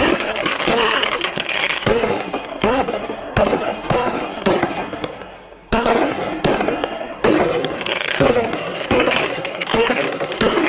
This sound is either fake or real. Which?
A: fake